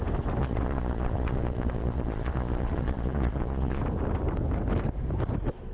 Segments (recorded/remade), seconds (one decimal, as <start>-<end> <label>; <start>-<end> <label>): 0.0-0.4 recorded; 0.4-3.8 remade; 3.8-5.7 recorded